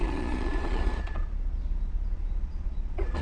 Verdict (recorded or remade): remade